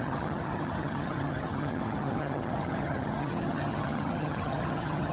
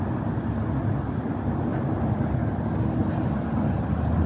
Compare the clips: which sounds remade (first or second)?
first